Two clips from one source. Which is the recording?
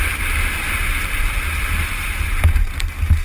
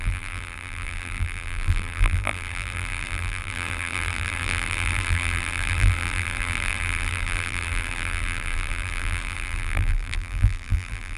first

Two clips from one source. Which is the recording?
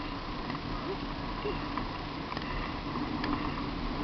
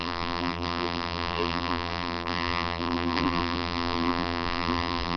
first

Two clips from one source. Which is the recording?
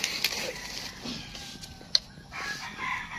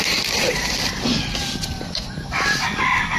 first